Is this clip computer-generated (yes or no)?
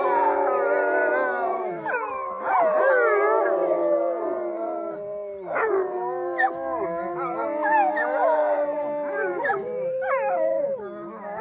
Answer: no